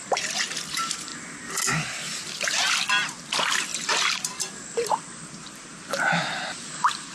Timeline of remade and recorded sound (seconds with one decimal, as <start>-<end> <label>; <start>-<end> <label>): 0.0-7.1 recorded